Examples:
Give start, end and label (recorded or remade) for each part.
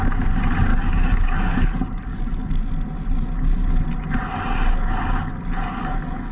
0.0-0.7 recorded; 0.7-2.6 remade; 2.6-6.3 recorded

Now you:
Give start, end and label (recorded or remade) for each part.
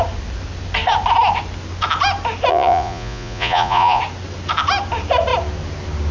0.0-2.5 recorded; 2.5-4.0 remade; 4.0-6.1 recorded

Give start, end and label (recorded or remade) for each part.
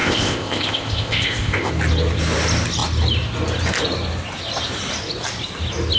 0.0-1.7 remade; 1.7-6.0 recorded